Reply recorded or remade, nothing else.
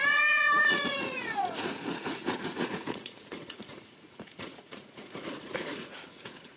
remade